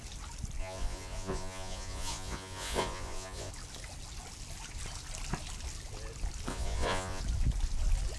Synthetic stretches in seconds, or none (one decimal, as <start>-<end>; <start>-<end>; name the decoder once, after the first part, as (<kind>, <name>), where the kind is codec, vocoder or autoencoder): 0.6-3.5 (vocoder, Vocos); 6.5-7.2